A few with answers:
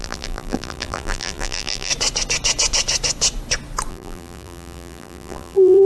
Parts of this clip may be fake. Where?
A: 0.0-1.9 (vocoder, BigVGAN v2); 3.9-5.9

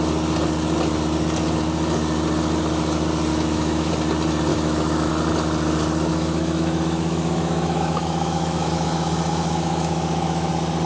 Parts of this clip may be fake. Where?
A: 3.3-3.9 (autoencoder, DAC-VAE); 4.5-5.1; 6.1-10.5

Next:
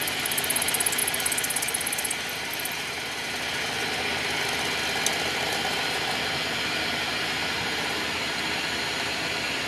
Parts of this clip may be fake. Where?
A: none

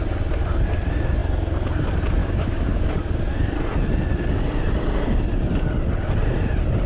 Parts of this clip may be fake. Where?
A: 2.2-3.2 (codec, DAC)